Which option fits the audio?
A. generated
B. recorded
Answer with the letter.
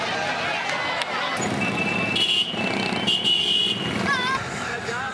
B